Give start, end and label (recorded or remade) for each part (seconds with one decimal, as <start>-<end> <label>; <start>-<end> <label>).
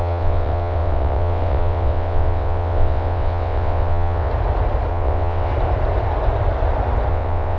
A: 0.0-4.3 remade; 4.3-4.9 recorded; 4.9-5.5 remade; 5.5-7.1 recorded; 7.1-7.6 remade